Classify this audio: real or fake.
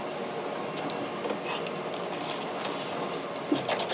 real